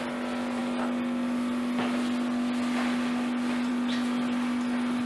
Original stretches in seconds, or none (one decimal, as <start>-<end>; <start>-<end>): 0.0-5.1